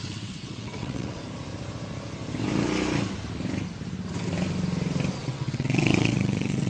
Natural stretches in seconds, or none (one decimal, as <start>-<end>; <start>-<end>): 1.2-5.2

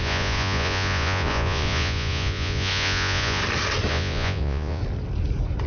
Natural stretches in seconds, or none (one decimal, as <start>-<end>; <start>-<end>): 3.4-3.9; 4.8-5.7

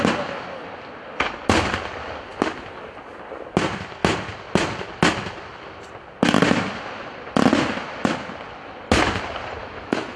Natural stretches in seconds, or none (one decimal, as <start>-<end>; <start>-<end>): 0.0-9.6